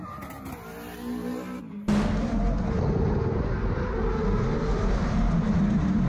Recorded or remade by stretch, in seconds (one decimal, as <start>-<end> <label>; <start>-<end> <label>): 0.0-4.6 recorded; 4.6-5.2 remade; 5.2-6.1 recorded